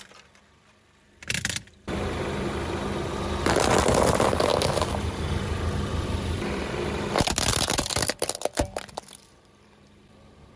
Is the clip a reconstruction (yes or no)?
yes